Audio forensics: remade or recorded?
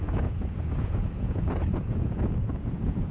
remade